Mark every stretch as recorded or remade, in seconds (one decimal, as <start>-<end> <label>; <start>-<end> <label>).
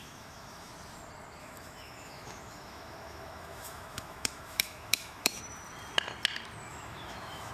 0.0-0.7 remade; 0.7-1.4 recorded; 1.4-5.4 remade; 5.4-6.7 recorded; 6.7-7.5 remade